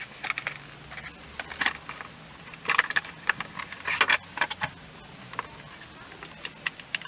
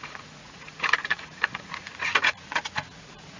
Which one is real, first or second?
first